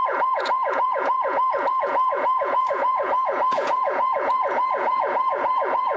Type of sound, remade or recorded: remade